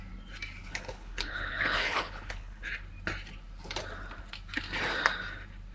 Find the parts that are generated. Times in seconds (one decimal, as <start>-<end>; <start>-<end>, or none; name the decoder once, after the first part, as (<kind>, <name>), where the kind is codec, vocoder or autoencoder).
0.6-2.7 (codec, HILCodec)